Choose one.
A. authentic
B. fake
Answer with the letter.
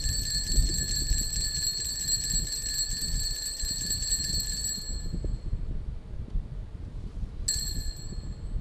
A